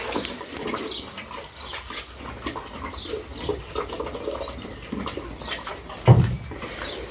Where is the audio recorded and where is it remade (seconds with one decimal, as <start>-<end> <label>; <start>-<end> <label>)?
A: 0.0-7.1 recorded